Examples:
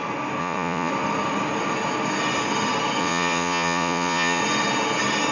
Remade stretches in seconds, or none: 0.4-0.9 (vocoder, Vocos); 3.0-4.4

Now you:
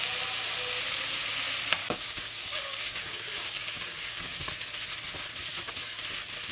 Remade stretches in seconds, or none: 1.8-4.5 (codec, DAC)

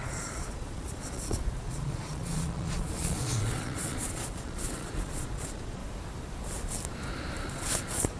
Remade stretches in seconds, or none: 0.0-5.8 (vocoder, Vocos); 7.5-8.2

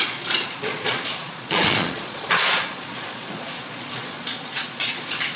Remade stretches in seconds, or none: 0.0-5.4 (vocoder, Vocos)

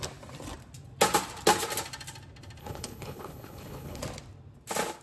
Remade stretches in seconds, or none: 2.6-4.0 (codec, HILCodec)